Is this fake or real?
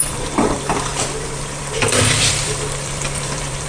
fake